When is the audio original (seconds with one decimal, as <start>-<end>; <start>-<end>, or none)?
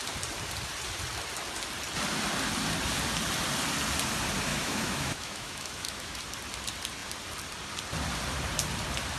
0.0-4.5; 6.2-9.2